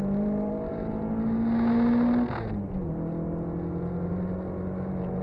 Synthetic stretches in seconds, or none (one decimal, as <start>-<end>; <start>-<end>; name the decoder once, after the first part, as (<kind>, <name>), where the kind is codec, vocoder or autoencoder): 0.0-1.0 (vocoder, BigVGAN v2); 4.1-5.2